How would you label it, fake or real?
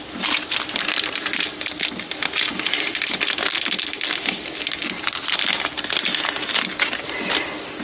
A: real